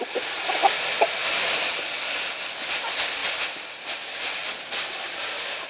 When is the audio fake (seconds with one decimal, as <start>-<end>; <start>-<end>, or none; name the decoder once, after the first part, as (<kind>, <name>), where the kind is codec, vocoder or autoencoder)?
0.0-0.6 (vocoder, BigVGAN v2); 2.7-3.2; 3.8-4.4